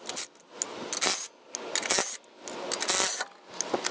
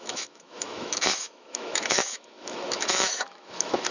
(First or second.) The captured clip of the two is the first